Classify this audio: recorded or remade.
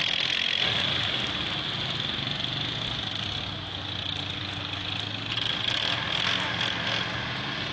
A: recorded